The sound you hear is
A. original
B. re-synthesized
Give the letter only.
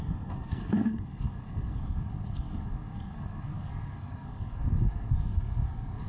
B